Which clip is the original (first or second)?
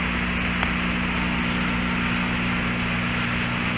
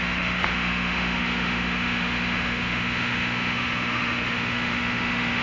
first